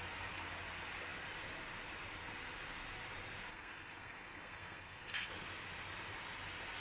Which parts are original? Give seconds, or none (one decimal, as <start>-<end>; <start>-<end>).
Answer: 0.0-3.5; 5.3-6.8

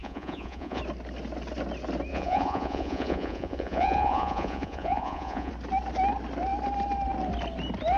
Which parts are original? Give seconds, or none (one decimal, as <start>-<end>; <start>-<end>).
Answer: 0.8-2.1; 5.5-8.0

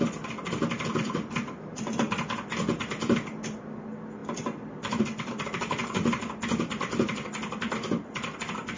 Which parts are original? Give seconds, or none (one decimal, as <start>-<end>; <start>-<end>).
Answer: 0.0-8.8

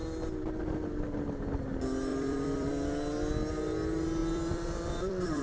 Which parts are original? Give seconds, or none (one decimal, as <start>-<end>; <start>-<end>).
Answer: 0.0-2.1; 2.7-4.2

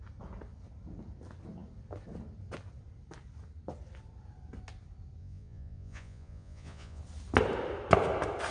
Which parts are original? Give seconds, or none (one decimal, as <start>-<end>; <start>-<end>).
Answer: 0.0-5.2; 7.0-8.5

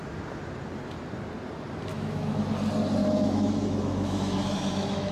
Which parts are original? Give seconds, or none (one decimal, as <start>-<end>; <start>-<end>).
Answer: 0.0-1.9; 2.5-3.0

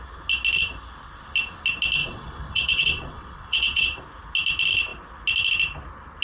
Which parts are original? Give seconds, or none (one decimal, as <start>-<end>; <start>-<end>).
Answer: 0.0-2.0; 4.0-6.2

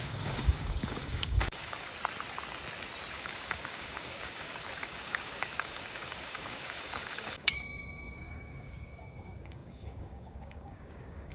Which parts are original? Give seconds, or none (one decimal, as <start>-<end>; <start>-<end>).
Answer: 1.9-3.1